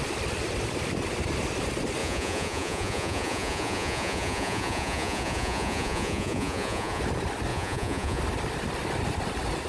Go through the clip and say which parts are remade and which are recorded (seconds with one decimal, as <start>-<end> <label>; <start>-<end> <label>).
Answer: 0.0-2.0 recorded; 2.0-7.0 remade; 7.0-7.5 recorded; 7.5-8.2 remade; 8.2-9.7 recorded